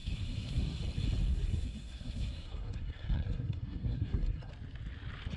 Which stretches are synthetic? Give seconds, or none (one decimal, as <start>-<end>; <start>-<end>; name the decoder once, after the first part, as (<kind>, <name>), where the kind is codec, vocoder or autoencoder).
0.0-0.8 (codec, SNAC); 1.3-4.5